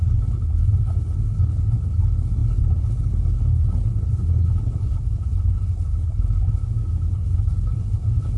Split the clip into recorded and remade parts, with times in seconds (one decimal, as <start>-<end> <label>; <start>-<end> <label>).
0.0-6.6 remade; 6.6-7.1 recorded; 7.1-8.4 remade

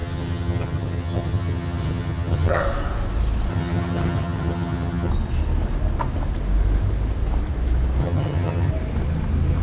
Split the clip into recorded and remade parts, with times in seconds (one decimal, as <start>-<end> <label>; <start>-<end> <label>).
0.0-2.6 remade; 2.6-3.5 recorded; 3.5-5.1 remade; 5.1-8.0 recorded; 8.0-8.7 remade; 8.7-9.6 recorded

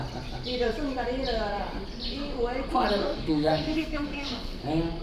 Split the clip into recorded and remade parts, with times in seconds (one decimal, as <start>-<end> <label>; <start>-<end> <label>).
0.0-3.0 recorded; 3.0-4.6 remade; 4.6-5.0 recorded

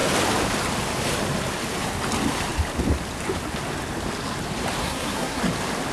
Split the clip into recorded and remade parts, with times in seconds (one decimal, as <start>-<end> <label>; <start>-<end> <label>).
0.0-4.8 recorded; 4.8-5.4 remade; 5.4-5.9 recorded

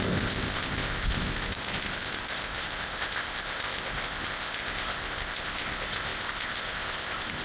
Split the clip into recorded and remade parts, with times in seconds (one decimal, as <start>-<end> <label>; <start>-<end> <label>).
0.0-7.4 remade

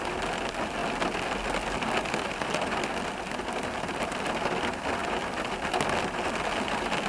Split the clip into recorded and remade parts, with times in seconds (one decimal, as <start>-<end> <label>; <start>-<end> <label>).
0.0-7.1 recorded